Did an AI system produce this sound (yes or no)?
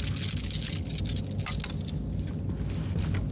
no